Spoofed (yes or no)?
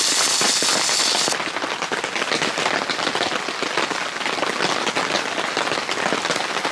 no